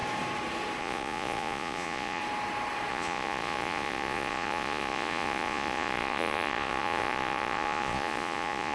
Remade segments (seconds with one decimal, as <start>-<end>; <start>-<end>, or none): 0.8-2.2; 2.9-8.7